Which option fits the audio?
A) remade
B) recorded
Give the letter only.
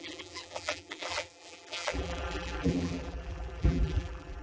A